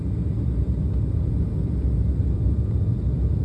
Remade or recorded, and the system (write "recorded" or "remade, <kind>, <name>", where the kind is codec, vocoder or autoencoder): recorded